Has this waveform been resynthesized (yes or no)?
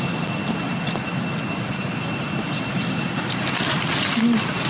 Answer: no